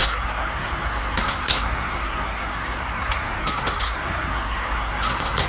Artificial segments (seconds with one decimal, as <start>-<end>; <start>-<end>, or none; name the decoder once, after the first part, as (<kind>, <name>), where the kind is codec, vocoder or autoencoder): 0.0-5.5 (codec, SNAC)